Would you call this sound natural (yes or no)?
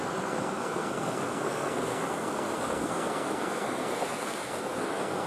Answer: no